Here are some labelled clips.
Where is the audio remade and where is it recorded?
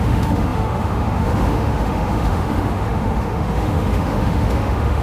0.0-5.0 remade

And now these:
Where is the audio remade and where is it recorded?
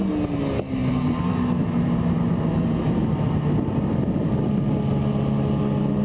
0.0-6.0 recorded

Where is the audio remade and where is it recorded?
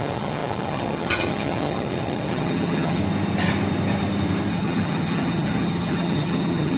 0.0-3.0 remade; 3.0-4.5 recorded; 4.5-6.8 remade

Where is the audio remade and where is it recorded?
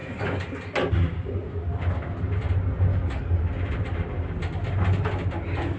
0.0-2.9 recorded; 2.9-3.4 remade; 3.4-5.8 recorded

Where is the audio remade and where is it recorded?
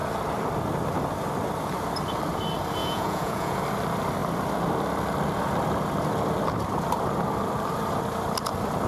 0.0-2.8 recorded; 2.8-3.6 remade; 3.6-8.9 recorded